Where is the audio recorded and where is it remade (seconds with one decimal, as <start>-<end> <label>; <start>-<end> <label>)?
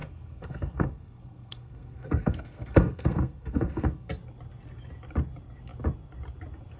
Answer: 0.0-4.1 remade; 4.1-6.8 recorded